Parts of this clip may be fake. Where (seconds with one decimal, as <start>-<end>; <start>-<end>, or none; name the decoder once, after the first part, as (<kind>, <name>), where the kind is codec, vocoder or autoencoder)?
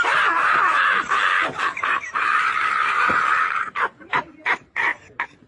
0.0-0.7 (vocoder, BigVGAN v2); 1.8-5.5